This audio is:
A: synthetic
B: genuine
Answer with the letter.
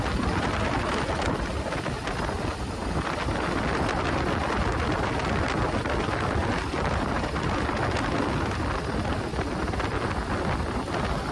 B